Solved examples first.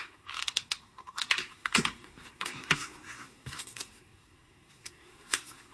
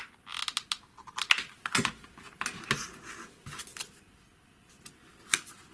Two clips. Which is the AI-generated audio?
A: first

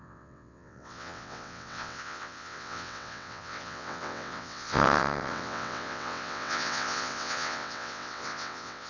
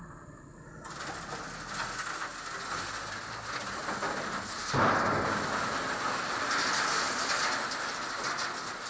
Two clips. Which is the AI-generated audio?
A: first